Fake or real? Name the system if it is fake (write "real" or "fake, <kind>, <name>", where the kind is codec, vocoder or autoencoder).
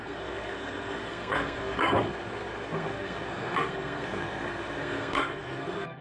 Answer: fake, codec, SNAC